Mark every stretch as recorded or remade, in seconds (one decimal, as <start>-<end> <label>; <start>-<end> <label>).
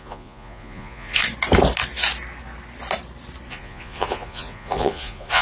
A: 0.0-1.2 remade; 1.2-3.5 recorded; 3.5-5.4 remade